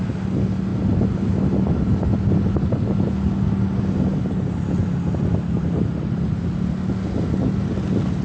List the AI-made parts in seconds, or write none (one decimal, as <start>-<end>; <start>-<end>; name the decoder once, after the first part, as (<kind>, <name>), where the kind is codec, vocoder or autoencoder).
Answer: none